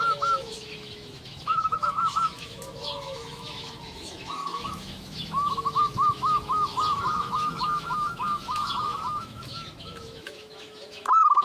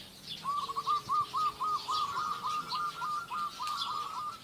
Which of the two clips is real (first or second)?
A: second